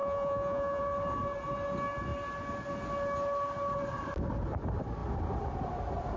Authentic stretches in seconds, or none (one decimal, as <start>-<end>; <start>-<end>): 0.8-6.2